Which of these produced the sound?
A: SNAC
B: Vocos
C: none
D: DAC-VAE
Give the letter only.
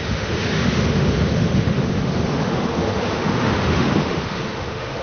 D